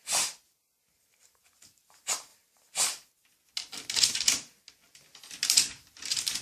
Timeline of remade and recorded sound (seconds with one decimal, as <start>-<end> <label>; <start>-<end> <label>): 0.0-6.4 recorded